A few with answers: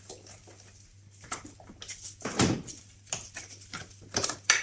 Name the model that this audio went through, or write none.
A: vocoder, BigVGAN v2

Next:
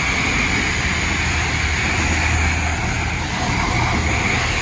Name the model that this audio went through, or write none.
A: none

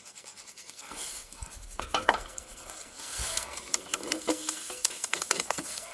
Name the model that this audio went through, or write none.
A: codec, SNAC